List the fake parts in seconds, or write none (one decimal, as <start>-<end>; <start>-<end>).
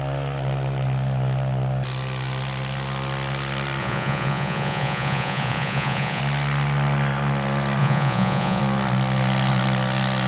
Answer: 3.8-6.2; 7.8-8.6